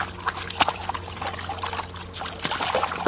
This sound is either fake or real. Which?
real